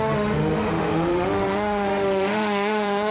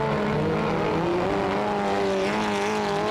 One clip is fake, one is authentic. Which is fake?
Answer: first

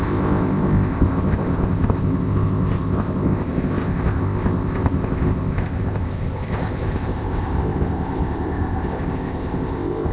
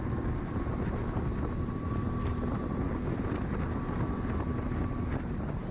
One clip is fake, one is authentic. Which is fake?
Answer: first